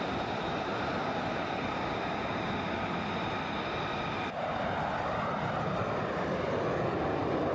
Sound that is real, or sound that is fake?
real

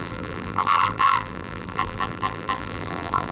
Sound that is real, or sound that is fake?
fake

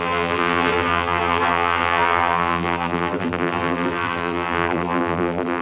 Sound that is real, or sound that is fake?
fake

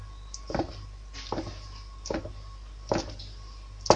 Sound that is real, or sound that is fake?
real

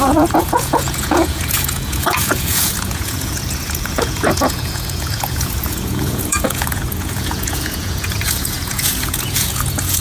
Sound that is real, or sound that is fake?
fake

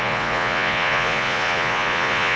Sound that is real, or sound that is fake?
fake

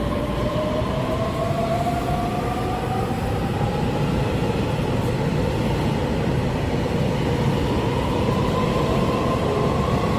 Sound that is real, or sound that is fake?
real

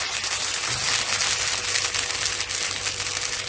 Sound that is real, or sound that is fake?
real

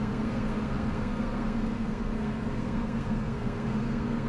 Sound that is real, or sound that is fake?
fake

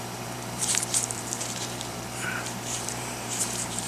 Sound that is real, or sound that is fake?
fake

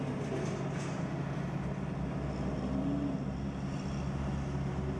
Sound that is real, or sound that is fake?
real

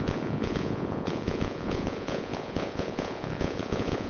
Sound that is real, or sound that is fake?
fake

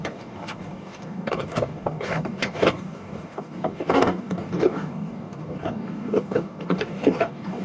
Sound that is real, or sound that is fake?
fake